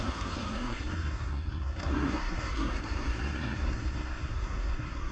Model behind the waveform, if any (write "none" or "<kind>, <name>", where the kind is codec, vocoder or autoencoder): codec, SNAC